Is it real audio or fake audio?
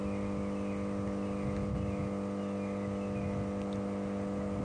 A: real